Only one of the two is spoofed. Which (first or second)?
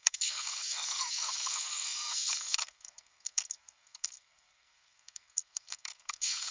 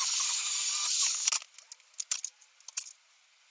first